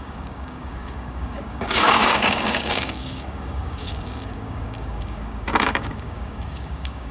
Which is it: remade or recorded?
remade